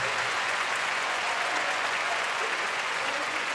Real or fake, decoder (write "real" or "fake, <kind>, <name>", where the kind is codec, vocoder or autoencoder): fake, vocoder, Vocos